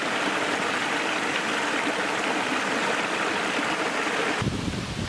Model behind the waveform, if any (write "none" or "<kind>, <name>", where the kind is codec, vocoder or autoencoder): none